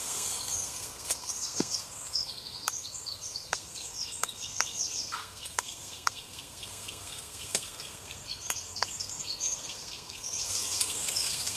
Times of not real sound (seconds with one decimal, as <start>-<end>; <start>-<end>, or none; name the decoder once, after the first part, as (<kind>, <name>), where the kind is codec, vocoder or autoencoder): 0.0-11.6 (codec, SNAC)